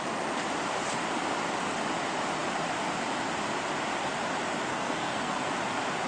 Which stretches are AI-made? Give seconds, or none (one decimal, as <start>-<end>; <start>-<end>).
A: 4.7-5.5